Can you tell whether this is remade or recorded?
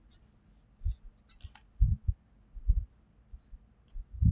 recorded